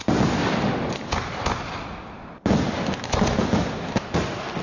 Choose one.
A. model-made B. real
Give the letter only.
B